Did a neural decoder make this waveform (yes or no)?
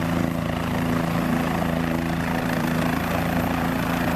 yes